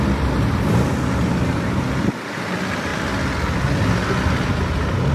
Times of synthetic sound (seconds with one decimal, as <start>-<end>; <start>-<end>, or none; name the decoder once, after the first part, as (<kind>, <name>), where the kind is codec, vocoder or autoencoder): none